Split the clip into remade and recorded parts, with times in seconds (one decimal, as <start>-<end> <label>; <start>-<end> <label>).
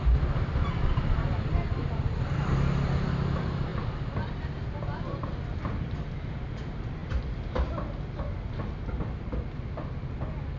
0.0-10.6 recorded